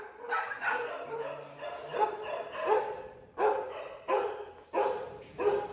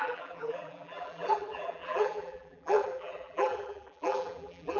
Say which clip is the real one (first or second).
first